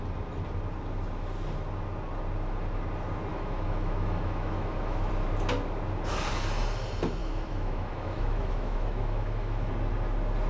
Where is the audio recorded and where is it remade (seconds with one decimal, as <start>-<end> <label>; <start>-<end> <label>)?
0.0-3.3 recorded; 3.3-5.1 remade; 5.1-7.2 recorded; 7.2-9.7 remade; 9.7-10.5 recorded